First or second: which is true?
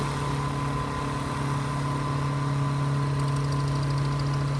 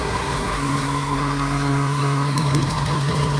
first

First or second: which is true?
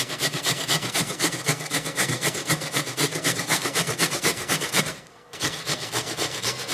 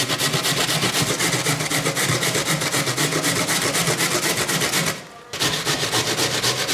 second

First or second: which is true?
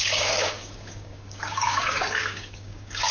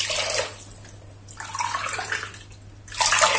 second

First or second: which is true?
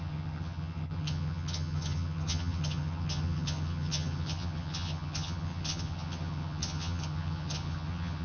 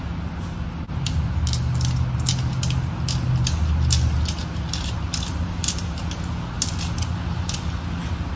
second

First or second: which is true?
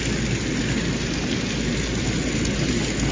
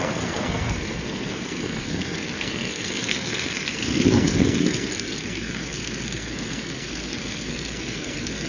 first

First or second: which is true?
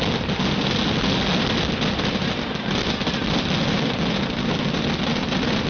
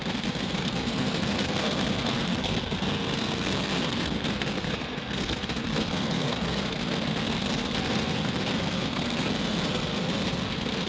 first